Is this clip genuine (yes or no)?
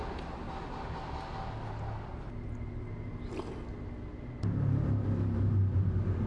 yes